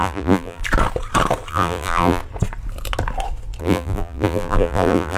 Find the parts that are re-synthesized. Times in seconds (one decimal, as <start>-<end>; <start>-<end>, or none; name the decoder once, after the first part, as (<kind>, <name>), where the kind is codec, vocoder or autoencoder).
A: 0.0-0.6 (vocoder, BigVGAN v2); 1.5-2.2; 3.6-5.2